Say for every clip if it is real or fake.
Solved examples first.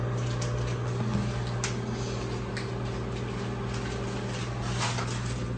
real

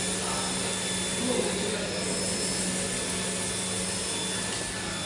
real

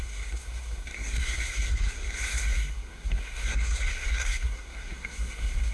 fake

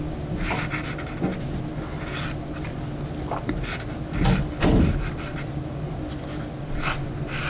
real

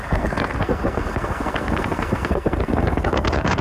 fake